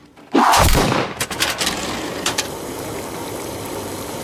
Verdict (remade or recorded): remade